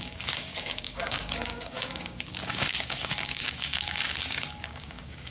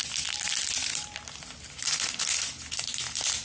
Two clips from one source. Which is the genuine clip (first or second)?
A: second